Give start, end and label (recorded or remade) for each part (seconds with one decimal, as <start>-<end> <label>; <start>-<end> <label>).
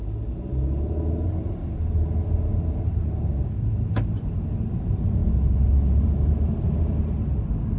0.0-7.8 recorded